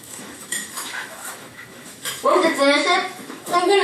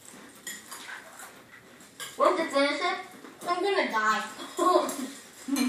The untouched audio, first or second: second